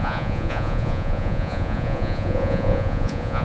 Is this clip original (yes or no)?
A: no